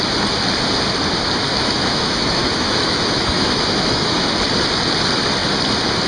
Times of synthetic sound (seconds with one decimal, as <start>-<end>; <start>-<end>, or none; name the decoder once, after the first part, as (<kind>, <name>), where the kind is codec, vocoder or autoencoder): 1.5-4.3 (autoencoder, DAC-VAE)